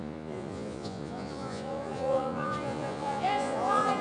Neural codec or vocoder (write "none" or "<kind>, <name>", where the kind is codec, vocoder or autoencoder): vocoder, Vocos